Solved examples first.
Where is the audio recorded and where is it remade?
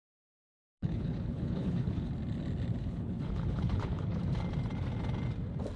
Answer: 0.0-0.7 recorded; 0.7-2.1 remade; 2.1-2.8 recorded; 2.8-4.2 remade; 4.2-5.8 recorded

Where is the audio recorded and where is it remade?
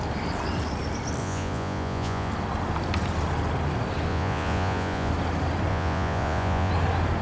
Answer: 0.0-1.2 recorded; 1.2-2.3 remade; 2.3-4.1 recorded; 4.1-5.1 remade; 5.1-5.7 recorded; 5.7-6.7 remade; 6.7-7.2 recorded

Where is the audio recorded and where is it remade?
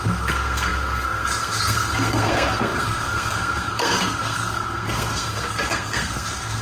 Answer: 0.0-6.6 remade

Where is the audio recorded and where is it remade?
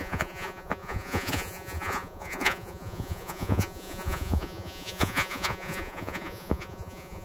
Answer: 0.0-7.2 remade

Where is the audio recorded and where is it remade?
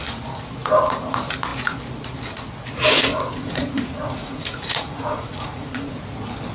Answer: 0.0-3.1 recorded; 3.1-5.9 remade; 5.9-6.5 recorded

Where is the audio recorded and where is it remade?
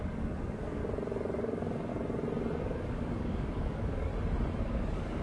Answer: 0.0-0.8 remade; 0.8-1.4 recorded; 1.4-1.9 remade; 1.9-2.6 recorded; 2.6-4.1 remade; 4.1-4.6 recorded; 4.6-5.2 remade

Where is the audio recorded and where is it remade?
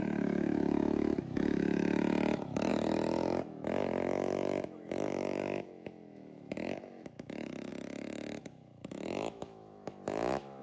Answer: 0.0-10.6 remade